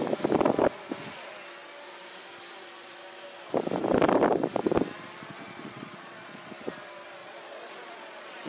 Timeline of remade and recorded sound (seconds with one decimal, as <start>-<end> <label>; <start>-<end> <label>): 0.0-5.6 recorded; 5.6-6.5 remade; 6.5-7.2 recorded; 7.2-8.5 remade